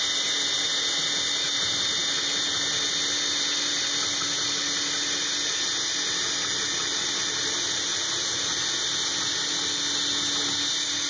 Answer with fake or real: real